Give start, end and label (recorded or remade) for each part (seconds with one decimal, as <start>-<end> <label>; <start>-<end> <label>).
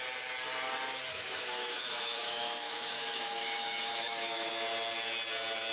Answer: 0.0-1.1 recorded; 1.1-4.5 remade; 4.5-5.7 recorded